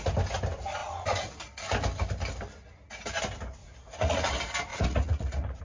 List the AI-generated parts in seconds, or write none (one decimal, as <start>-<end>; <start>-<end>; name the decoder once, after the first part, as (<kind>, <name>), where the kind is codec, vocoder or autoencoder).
3.6-4.3 (vocoder, Vocos); 4.7-5.6